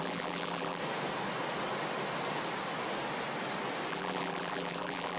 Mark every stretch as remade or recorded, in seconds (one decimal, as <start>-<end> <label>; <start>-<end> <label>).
0.0-0.8 remade; 0.8-3.9 recorded; 3.9-5.2 remade